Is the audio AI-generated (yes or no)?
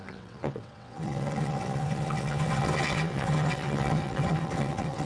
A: yes